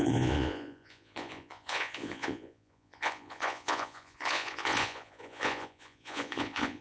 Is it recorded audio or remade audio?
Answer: remade